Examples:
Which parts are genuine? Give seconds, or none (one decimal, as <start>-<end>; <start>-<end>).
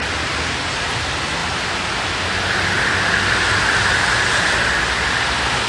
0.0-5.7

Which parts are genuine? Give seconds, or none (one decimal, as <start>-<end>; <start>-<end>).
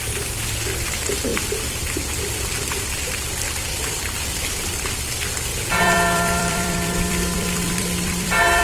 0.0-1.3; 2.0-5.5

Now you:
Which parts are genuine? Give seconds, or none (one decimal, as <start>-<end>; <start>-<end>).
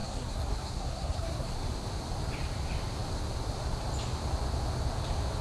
1.5-5.4